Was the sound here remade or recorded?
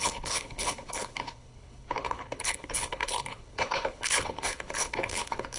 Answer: remade